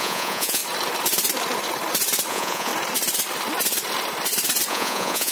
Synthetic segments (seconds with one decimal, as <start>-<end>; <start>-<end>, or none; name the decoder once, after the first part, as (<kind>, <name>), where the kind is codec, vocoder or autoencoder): 0.0-0.6 (vocoder, Vocos); 2.3-2.7; 4.7-5.3